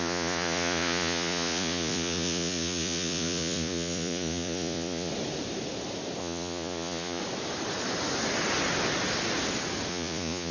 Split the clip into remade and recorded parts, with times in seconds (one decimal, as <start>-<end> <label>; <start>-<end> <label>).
0.0-5.1 remade; 5.1-6.2 recorded; 6.2-7.2 remade; 7.2-9.9 recorded; 9.9-10.5 remade